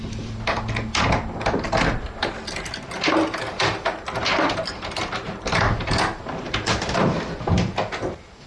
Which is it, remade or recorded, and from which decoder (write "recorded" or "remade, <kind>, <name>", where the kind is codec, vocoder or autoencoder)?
recorded